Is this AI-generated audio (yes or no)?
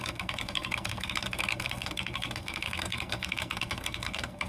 yes